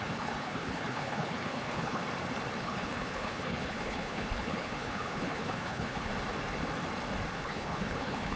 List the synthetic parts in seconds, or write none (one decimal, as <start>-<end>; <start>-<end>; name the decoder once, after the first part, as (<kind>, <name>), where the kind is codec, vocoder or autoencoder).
0.0-2.0 (codec, HILCodec); 2.6-6.1; 7.3-8.4